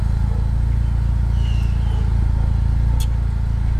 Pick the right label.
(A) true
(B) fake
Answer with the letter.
A